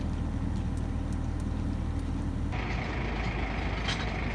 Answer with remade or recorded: recorded